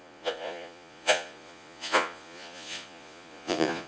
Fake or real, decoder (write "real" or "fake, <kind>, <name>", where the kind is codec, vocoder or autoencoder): fake, vocoder, Vocos